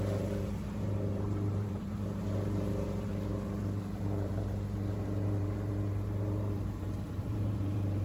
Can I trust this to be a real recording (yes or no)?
no